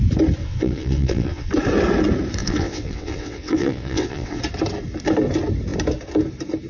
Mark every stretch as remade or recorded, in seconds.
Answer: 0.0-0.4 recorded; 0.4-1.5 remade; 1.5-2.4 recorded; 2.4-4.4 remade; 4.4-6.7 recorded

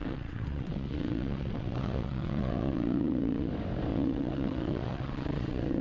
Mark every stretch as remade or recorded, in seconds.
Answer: 0.0-3.5 remade; 3.5-3.9 recorded; 3.9-5.8 remade

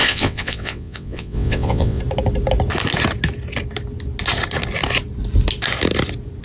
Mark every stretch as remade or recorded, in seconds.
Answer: 0.0-2.0 remade; 2.0-6.4 recorded

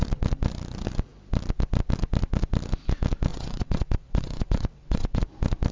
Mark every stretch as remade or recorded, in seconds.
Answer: 0.0-3.3 recorded; 3.3-5.2 remade; 5.2-5.7 recorded

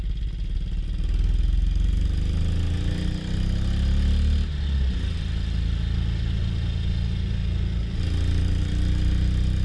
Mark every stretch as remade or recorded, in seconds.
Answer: 0.0-9.6 recorded